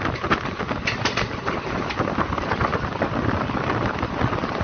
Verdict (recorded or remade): recorded